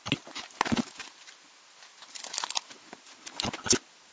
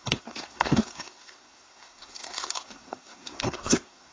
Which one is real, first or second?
first